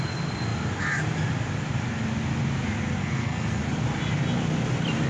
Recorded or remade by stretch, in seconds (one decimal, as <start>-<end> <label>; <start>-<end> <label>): 0.0-3.0 recorded; 3.0-3.6 remade; 3.6-5.1 recorded